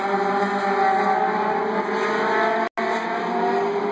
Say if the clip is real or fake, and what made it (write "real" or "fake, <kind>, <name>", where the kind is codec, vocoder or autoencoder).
real